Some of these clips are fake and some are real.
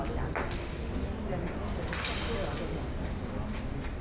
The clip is real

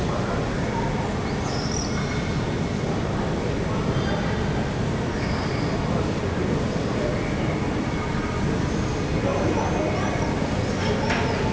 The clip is real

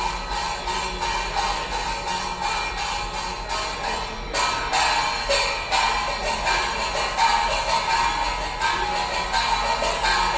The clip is real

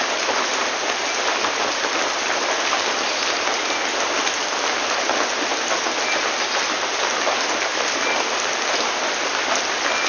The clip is real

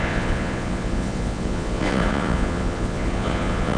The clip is fake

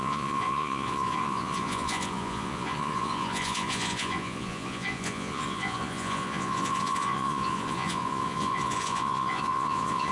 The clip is fake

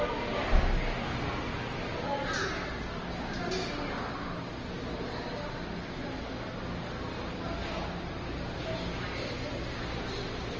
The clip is real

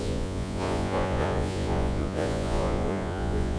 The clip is fake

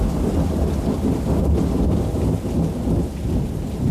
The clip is real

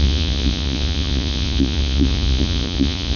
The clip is fake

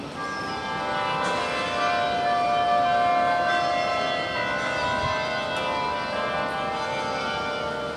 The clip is real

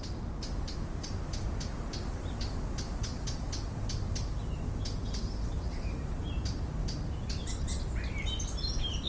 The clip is real